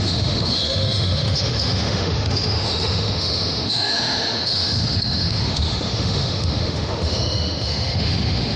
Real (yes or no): no